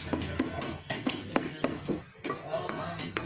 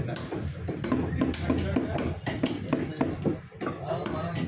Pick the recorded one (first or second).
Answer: second